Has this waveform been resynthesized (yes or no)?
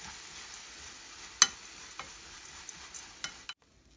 no